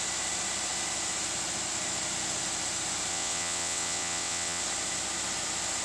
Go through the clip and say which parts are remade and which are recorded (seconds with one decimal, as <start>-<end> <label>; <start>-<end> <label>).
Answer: 0.0-3.1 recorded; 3.1-4.6 remade; 4.6-5.8 recorded